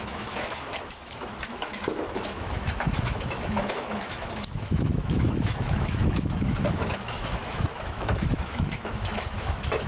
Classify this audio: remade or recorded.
remade